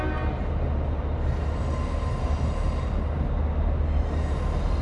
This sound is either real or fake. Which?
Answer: real